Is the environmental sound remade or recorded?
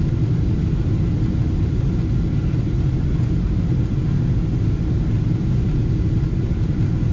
recorded